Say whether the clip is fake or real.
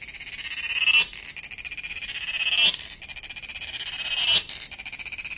real